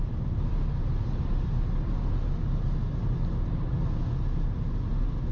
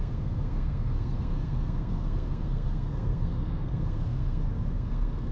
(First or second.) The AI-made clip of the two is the second